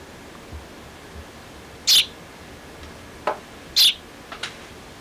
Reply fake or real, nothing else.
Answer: real